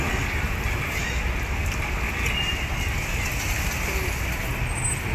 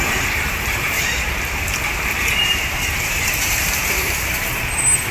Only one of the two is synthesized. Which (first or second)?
second